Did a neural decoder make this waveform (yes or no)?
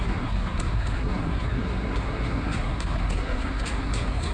yes